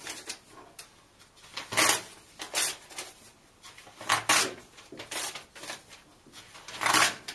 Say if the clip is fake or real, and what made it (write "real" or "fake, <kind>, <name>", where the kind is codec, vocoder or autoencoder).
real